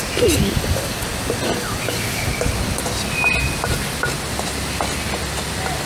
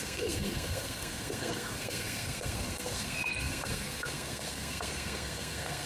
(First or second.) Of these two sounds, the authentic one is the first